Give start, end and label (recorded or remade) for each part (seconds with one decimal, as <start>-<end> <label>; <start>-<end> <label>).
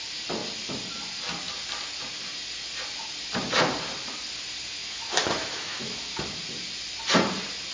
0.0-4.8 recorded; 4.8-6.2 remade; 6.2-7.7 recorded